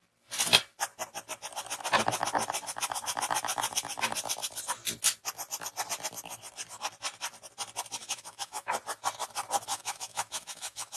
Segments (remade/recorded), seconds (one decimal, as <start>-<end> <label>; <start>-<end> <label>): 0.0-8.0 recorded; 8.0-8.7 remade; 8.7-9.7 recorded; 9.7-11.0 remade

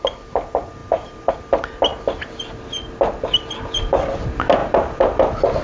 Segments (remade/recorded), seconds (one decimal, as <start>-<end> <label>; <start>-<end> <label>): 0.0-0.8 recorded; 0.8-1.3 remade; 1.3-4.6 recorded; 4.6-5.6 remade